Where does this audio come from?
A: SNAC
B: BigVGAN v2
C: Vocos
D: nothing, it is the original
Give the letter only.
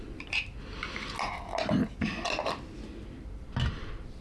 D